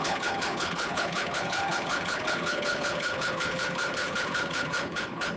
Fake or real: fake